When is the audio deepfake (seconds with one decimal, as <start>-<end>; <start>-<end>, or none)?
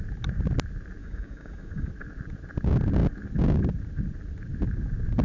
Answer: 1.0-1.9